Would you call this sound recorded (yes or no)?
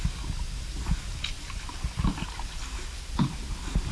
yes